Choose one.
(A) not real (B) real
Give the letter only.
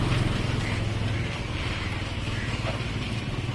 B